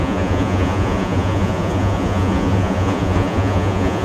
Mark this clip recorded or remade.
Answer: remade